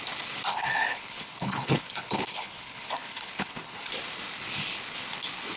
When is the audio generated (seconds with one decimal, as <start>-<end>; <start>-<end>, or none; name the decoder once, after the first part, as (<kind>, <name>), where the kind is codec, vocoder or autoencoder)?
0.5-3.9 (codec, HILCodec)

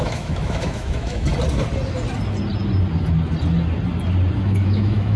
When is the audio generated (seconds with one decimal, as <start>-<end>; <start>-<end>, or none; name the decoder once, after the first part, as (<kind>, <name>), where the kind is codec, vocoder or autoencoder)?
0.0-1.3 (autoencoder, DAC-VAE); 4.4-5.2

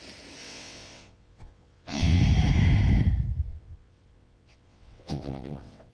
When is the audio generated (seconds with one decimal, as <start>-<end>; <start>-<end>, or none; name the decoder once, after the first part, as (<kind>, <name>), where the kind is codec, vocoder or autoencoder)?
0.4-2.2 (vocoder, WaveNeXt); 3.5-5.9